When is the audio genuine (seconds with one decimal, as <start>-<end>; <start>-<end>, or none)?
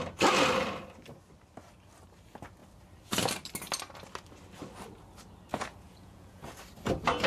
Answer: 0.0-5.5; 6.6-7.3